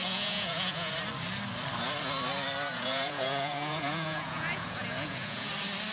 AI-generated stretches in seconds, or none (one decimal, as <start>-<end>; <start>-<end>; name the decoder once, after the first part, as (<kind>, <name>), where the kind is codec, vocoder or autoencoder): 0.0-0.9 (vocoder, Vocos); 2.7-5.5